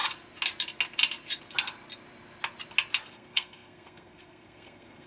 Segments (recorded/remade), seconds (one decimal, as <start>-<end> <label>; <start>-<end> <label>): 0.0-3.1 recorded; 3.1-5.1 remade